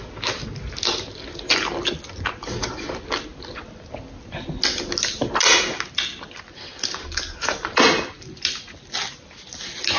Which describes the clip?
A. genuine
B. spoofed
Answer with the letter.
A